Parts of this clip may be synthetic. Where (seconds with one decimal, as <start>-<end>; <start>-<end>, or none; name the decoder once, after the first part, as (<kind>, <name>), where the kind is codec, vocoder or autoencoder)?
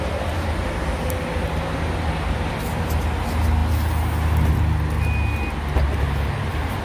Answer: none